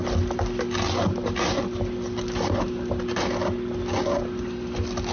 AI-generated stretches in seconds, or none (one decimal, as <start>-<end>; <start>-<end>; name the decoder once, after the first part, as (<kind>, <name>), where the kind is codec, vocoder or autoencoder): none